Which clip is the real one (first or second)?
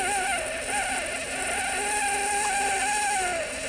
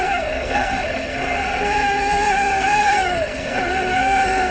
first